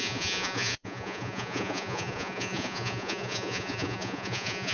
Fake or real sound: fake